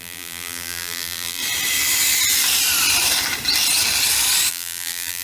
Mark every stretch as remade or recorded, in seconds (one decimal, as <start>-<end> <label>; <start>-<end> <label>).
0.0-1.4 remade; 1.4-4.5 recorded; 4.5-5.2 remade